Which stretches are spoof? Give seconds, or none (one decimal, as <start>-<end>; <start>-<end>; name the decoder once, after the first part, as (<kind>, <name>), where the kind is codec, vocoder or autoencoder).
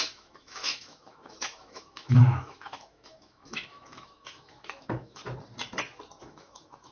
0.0-5.2 (autoencoder, DAC-VAE); 6.2-6.9